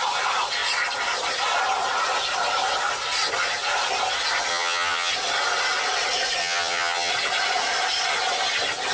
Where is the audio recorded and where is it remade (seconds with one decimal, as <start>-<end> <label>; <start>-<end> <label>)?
0.0-4.5 recorded; 4.5-5.1 remade; 5.1-6.4 recorded; 6.4-7.1 remade; 7.1-8.9 recorded